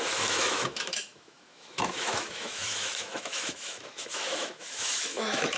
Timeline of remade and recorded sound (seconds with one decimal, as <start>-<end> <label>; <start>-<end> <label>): 0.0-5.6 remade